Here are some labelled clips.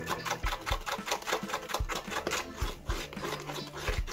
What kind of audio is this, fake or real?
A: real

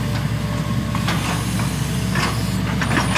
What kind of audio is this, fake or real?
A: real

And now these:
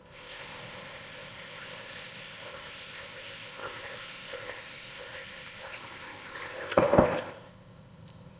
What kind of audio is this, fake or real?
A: fake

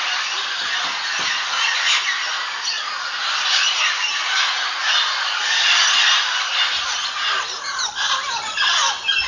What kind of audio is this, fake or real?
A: real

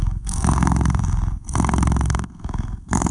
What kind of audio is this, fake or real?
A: fake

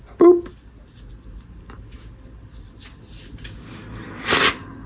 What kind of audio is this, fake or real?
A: real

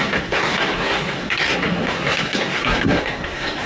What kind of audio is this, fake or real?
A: fake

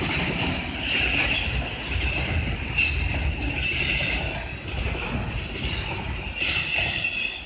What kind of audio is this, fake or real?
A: real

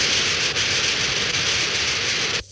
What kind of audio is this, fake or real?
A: real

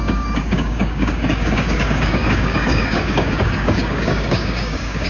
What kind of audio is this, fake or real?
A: fake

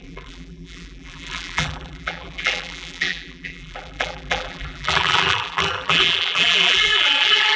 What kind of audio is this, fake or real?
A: fake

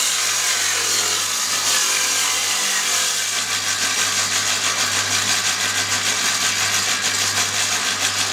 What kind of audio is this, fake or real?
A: real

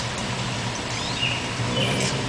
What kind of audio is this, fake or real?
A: real